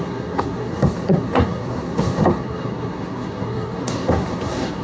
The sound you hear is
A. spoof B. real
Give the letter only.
A